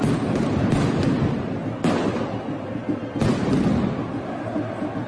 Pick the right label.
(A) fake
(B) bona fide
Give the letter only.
B